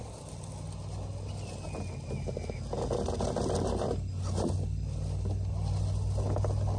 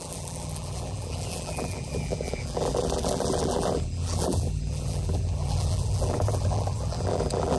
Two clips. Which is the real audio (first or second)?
first